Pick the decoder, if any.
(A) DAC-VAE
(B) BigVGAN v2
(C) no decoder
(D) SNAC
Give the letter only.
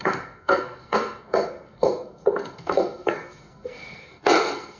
D